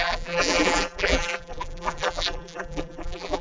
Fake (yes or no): yes